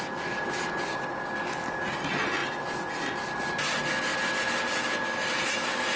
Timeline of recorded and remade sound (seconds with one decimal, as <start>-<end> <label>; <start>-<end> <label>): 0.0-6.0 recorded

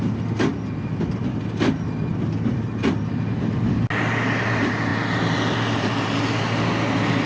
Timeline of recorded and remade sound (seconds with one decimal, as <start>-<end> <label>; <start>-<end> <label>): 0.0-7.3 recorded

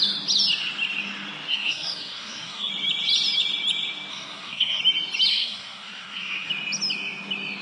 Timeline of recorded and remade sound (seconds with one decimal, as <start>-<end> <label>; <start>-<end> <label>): 0.0-1.5 recorded; 1.5-2.7 remade; 2.7-4.1 recorded; 4.1-4.8 remade; 4.8-5.3 recorded; 5.3-6.5 remade; 6.5-7.6 recorded

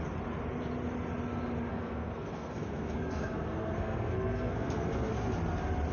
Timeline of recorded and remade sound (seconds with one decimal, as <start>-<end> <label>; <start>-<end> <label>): 0.0-1.7 recorded; 1.7-5.1 remade; 5.1-5.9 recorded